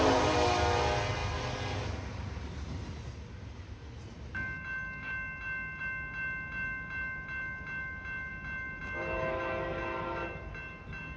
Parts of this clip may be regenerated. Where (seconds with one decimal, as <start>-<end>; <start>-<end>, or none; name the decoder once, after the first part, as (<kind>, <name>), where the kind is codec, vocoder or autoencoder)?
none